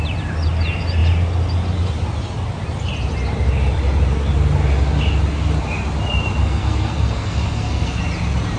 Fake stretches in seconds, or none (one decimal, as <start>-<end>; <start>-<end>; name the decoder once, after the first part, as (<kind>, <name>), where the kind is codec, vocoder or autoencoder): 6.4-8.0 (codec, SNAC)